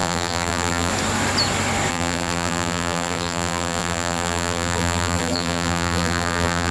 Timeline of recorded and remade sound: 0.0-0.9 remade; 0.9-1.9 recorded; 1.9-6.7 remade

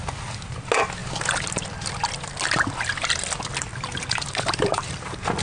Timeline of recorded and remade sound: 0.0-3.7 recorded; 3.7-5.4 remade

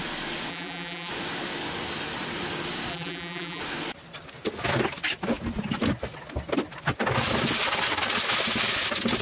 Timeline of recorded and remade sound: 0.0-0.5 recorded; 0.5-1.1 remade; 1.1-2.9 recorded; 2.9-3.6 remade; 3.6-9.2 recorded